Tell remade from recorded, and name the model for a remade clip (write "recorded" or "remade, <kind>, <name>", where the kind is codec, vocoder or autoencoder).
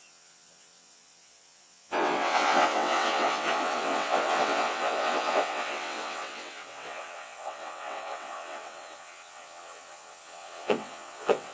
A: remade, vocoder, WaveNeXt